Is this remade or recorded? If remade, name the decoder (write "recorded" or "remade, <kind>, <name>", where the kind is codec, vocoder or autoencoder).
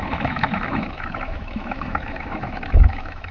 remade, autoencoder, DAC-VAE